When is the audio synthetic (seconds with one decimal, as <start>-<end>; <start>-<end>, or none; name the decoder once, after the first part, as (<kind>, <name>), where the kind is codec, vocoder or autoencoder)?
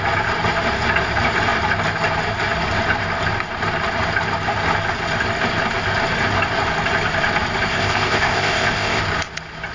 7.7-9.0 (codec, ZipCodec)